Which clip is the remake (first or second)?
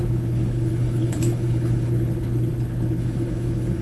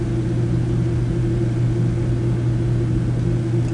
first